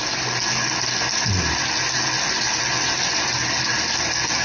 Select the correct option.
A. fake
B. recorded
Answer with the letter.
B